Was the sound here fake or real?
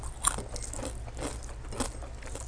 real